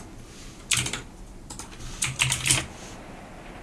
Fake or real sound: real